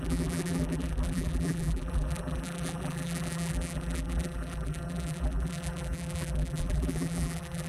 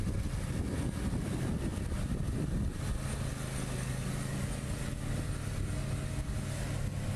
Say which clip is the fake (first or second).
first